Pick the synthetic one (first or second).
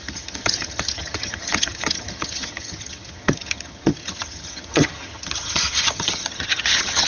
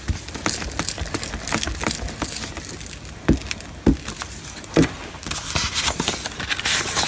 first